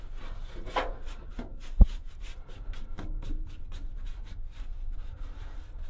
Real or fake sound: real